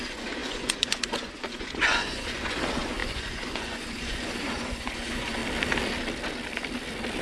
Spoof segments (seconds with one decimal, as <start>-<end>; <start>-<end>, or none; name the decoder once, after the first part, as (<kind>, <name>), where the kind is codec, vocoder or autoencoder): 0.0-5.4 (vocoder, Vocos)